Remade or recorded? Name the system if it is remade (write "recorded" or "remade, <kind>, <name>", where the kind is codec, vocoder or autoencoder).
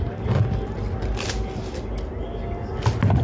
recorded